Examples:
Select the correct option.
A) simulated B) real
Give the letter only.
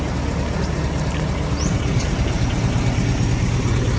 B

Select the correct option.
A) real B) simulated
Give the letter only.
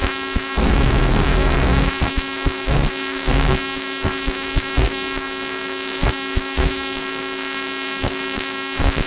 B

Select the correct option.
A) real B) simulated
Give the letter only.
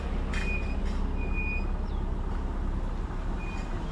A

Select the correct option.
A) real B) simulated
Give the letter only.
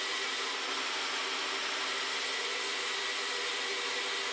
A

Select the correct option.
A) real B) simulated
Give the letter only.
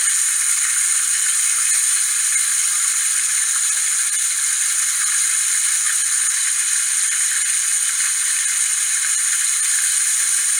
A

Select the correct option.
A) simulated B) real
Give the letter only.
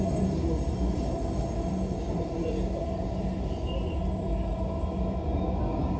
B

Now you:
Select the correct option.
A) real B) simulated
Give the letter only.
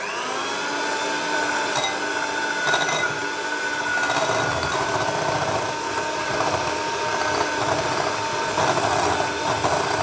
A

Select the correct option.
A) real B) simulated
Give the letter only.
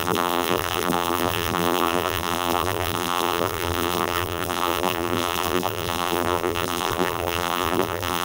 B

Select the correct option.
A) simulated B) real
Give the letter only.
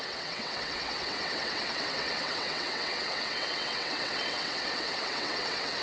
A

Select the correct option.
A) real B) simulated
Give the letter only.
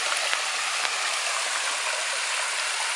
A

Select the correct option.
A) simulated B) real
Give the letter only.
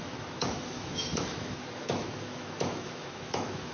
A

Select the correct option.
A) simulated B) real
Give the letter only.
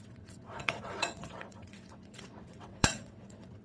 A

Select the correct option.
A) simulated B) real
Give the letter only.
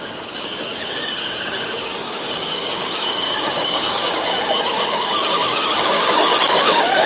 A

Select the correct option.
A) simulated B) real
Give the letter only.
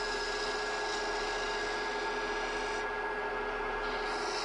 B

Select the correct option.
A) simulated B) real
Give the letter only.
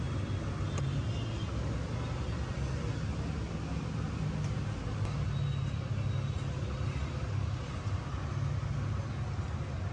B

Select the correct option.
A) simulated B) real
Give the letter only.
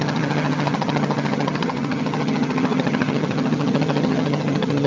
A